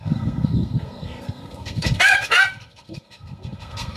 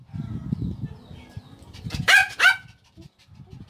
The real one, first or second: second